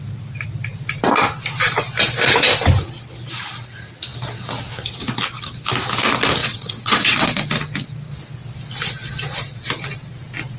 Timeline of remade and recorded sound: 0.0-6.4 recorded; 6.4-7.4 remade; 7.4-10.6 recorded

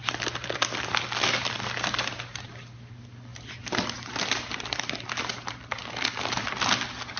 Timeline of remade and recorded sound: 0.0-7.2 recorded

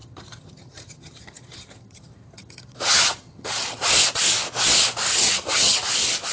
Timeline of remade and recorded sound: 0.0-3.8 remade; 3.8-5.1 recorded; 5.1-5.8 remade; 5.8-6.3 recorded